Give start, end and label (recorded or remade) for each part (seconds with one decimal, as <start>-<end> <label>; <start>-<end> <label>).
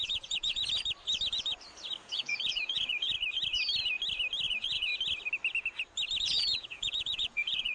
0.0-0.6 remade; 0.6-2.0 recorded; 2.0-3.1 remade; 3.1-4.5 recorded; 4.5-4.9 remade; 4.9-6.2 recorded; 6.2-7.7 remade